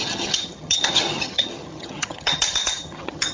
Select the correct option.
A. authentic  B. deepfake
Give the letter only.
B